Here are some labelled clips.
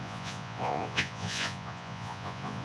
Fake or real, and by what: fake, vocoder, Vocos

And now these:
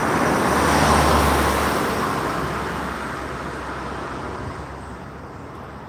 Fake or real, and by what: real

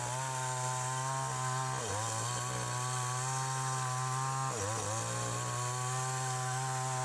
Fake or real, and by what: real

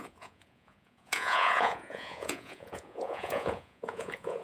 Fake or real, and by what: fake, vocoder, Vocos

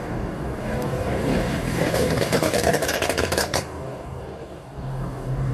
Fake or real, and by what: fake, codec, DAC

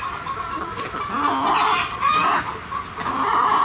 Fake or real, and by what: real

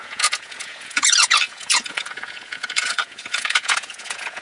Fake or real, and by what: fake, vocoder, Vocos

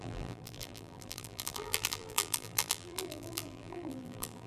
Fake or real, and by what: fake, vocoder, BigVGAN v2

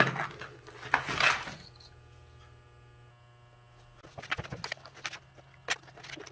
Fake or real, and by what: real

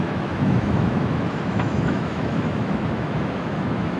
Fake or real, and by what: fake, autoencoder, DAC-VAE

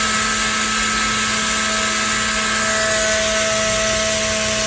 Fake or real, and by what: real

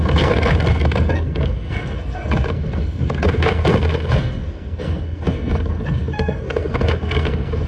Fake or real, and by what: fake, codec, SNAC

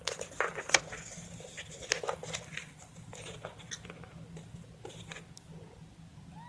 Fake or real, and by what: real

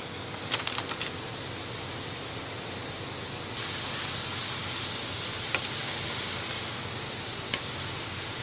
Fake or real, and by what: real